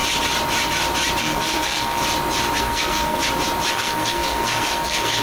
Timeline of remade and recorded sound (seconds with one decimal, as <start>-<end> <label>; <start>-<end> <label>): 0.0-1.2 recorded; 1.2-2.0 remade; 2.0-2.6 recorded; 2.6-3.2 remade; 3.2-3.7 recorded; 3.7-5.2 remade